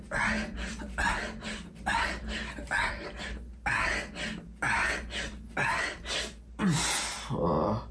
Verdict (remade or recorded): recorded